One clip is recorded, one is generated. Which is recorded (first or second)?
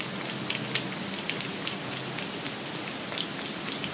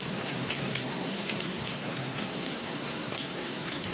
first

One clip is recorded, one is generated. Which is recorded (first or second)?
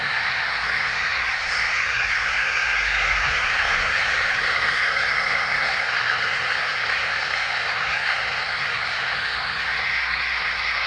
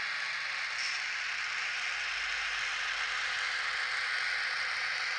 second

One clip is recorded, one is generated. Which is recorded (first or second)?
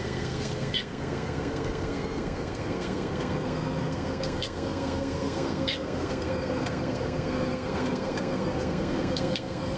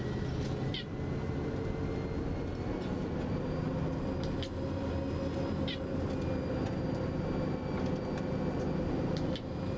second